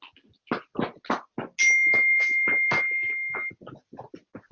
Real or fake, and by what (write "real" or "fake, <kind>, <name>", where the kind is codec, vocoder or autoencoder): real